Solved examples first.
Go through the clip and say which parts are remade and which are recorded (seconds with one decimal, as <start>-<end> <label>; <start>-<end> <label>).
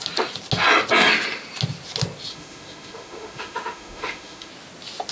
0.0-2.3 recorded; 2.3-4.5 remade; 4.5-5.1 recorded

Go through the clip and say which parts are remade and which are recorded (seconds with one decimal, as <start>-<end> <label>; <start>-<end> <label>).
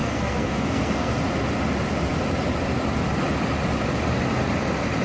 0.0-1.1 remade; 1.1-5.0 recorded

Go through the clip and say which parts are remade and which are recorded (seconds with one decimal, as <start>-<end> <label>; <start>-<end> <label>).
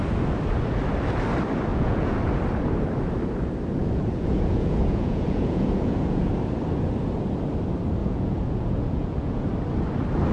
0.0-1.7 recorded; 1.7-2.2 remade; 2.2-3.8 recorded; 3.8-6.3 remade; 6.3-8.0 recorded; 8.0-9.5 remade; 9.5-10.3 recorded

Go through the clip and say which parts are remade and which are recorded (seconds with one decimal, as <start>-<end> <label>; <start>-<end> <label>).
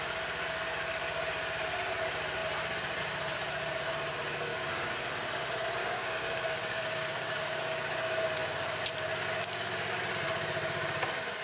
0.0-4.5 recorded; 4.5-5.1 remade; 5.1-5.8 recorded; 5.8-7.4 remade; 7.4-11.4 recorded